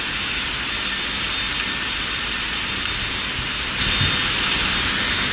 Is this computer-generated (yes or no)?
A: no